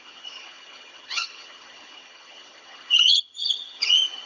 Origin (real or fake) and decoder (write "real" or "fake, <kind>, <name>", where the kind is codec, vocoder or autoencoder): fake, vocoder, HiFi-GAN